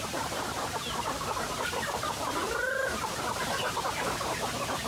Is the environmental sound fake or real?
fake